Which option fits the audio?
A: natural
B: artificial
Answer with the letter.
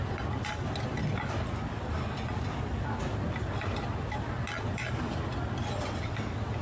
A